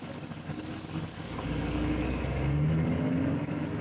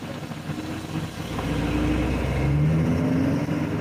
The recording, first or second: second